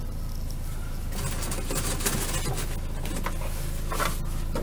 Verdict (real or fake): real